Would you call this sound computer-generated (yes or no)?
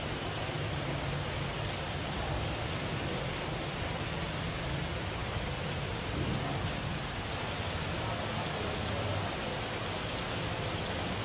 no